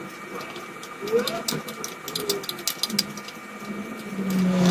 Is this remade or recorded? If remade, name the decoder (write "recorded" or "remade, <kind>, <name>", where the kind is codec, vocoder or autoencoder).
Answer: recorded